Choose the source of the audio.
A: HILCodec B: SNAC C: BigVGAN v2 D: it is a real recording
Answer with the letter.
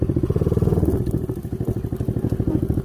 D